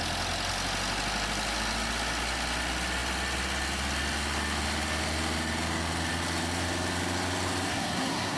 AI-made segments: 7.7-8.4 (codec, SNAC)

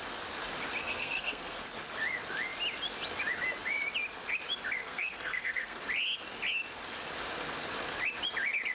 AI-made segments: 0.8-1.6 (codec, SNAC); 4.8-5.8

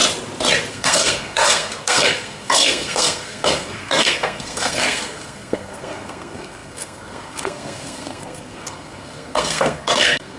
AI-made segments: 0.7-10.4 (codec, SNAC)

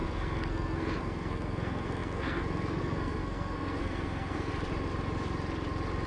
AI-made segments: 0.0-4.5 (codec, SNAC)

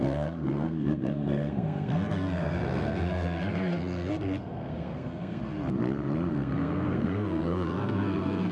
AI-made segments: 0.0-5.4 (codec, SNAC); 6.3-8.5